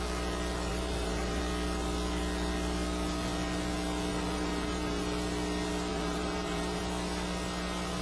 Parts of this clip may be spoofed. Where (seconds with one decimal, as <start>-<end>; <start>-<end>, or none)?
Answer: 0.7-1.4; 4.1-5.0; 5.9-6.8